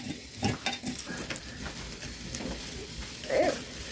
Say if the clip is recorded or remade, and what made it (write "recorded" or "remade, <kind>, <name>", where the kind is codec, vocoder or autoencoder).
recorded